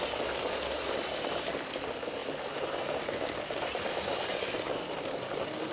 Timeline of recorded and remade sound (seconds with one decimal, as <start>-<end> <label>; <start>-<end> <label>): 0.0-5.7 recorded